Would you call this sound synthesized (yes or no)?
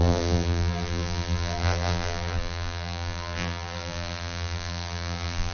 yes